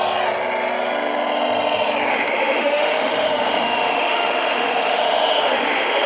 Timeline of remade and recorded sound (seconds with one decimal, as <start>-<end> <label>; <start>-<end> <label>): 0.0-2.1 recorded; 2.1-6.1 remade